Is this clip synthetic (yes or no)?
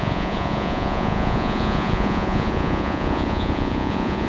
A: yes